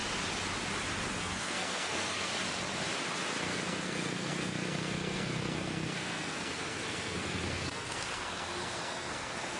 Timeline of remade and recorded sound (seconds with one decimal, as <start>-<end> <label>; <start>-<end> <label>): 0.0-1.2 recorded; 1.2-2.3 remade; 2.3-3.4 recorded; 3.4-9.6 remade